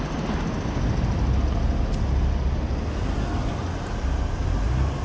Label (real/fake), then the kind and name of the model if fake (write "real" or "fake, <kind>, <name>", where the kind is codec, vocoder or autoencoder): real